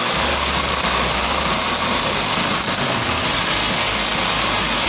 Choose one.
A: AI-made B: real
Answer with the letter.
B